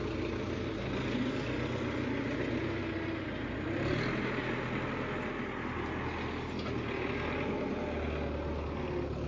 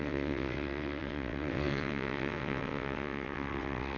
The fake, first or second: second